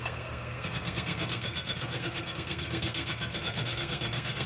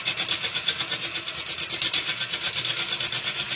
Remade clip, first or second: first